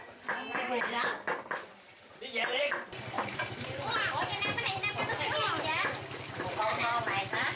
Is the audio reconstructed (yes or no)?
yes